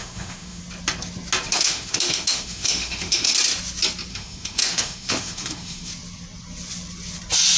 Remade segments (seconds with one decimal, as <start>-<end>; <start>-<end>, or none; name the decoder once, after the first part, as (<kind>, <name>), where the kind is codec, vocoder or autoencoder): 0.0-0.6 (autoencoder, DAC-VAE); 1.5-3.3; 4.1-5.9